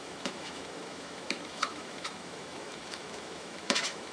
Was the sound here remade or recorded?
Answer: remade